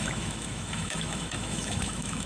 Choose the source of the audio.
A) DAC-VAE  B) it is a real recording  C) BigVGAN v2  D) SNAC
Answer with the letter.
A